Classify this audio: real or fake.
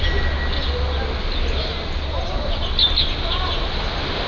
real